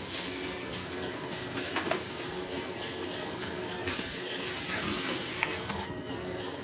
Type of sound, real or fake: fake